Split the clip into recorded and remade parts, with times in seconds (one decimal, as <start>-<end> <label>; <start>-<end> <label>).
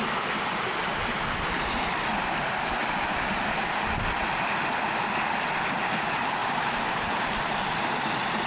0.0-8.5 recorded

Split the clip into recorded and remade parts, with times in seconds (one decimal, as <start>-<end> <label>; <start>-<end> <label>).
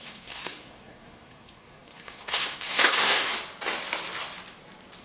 0.0-3.3 remade; 3.3-5.0 recorded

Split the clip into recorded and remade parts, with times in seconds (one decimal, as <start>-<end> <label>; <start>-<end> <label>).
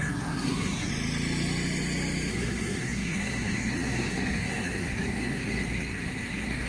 0.0-0.9 remade; 0.9-2.3 recorded; 2.3-6.7 remade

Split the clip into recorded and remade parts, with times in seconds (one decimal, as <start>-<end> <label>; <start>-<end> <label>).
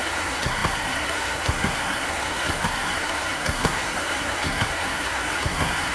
0.0-5.9 remade